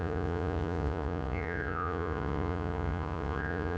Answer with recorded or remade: remade